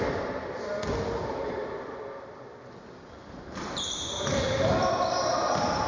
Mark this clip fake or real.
fake